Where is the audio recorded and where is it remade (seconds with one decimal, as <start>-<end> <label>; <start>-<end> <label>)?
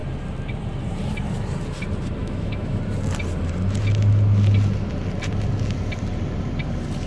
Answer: 0.0-2.2 recorded; 2.2-2.8 remade; 2.8-7.1 recorded